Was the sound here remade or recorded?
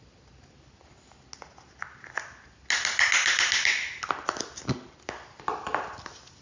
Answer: recorded